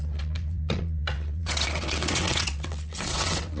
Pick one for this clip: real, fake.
fake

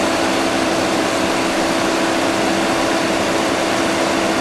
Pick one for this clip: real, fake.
real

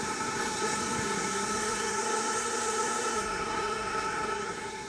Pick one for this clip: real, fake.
fake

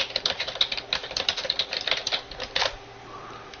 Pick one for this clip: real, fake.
real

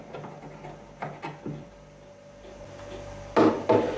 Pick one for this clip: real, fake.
real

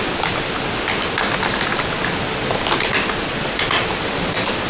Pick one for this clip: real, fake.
real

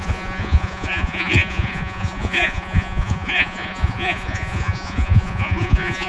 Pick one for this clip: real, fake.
fake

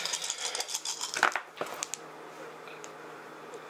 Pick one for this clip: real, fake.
real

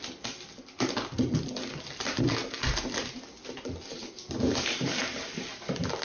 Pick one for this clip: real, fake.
real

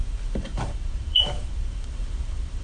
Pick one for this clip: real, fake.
fake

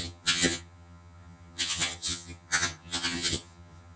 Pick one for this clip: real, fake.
fake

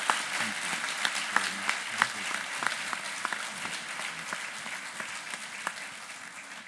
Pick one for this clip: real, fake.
real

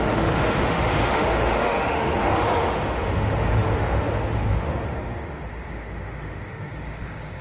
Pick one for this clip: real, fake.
fake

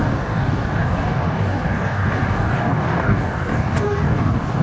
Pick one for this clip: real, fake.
fake